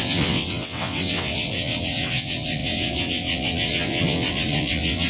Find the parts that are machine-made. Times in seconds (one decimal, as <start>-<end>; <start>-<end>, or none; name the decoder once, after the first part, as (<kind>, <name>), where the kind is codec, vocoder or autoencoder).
0.0-5.1 (vocoder, WaveNeXt)